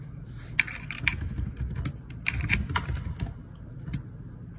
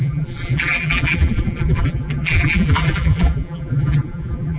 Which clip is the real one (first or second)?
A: first